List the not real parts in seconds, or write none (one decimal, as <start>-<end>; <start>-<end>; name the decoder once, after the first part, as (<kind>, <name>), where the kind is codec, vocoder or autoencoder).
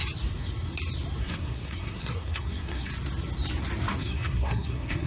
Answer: 1.2-2.9 (codec, SNAC); 4.0-5.1